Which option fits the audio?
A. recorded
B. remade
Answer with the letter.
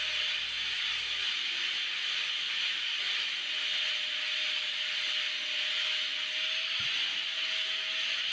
A